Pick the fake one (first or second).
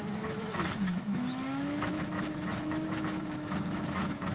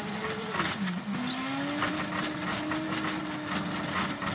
first